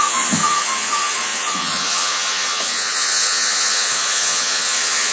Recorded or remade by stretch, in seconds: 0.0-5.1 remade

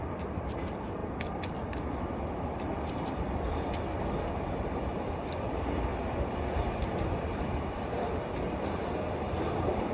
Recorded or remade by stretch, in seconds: 0.0-1.0 remade; 1.0-4.2 recorded; 4.2-5.9 remade; 5.9-7.7 recorded; 7.7-9.9 remade

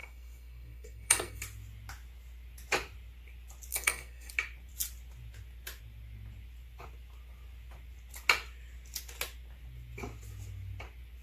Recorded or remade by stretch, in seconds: 0.0-1.4 remade; 1.4-3.7 recorded; 3.7-4.3 remade; 4.3-11.2 recorded